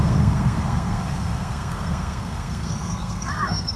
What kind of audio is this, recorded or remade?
remade